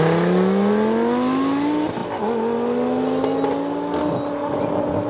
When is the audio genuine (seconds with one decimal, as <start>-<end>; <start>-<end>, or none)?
0.0-5.1